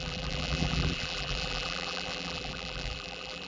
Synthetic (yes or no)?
yes